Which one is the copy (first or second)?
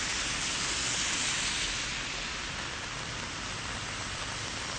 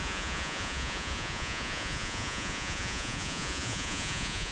second